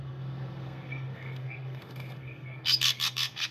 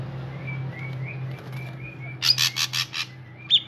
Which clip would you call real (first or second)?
second